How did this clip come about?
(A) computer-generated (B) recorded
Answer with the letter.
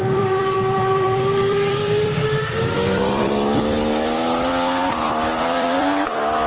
A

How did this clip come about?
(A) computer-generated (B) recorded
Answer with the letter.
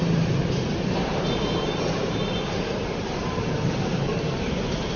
A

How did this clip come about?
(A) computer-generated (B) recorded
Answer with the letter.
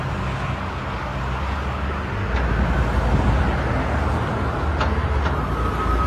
B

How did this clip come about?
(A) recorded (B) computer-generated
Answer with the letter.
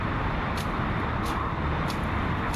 A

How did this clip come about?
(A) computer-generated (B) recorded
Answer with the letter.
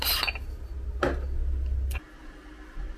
B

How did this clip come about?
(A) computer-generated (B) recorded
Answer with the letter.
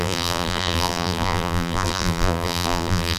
A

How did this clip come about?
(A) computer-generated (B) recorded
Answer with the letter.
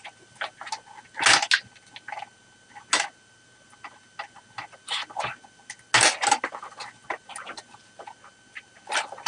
B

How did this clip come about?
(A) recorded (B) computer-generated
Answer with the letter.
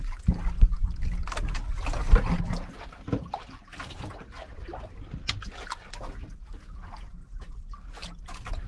A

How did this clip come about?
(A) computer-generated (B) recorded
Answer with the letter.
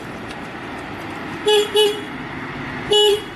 A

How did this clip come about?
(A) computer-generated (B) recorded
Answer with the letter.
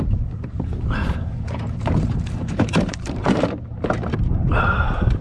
A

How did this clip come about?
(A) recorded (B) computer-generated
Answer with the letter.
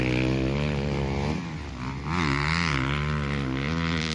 A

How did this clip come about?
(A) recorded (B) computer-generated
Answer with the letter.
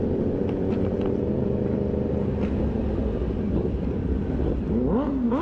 B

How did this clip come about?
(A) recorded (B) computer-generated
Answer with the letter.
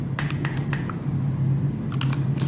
A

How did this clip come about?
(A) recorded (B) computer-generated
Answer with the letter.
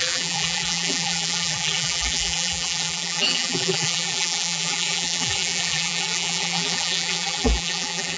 B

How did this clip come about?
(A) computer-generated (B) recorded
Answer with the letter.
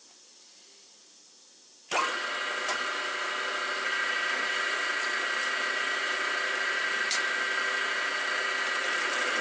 B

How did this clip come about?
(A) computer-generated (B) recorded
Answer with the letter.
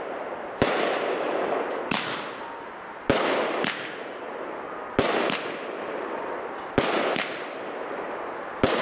B